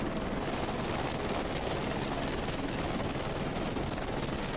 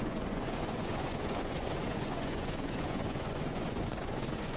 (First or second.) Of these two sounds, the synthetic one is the second